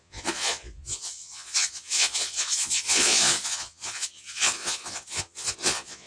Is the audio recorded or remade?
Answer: remade